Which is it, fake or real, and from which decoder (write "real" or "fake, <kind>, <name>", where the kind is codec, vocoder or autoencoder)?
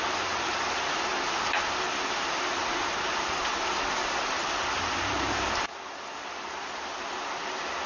real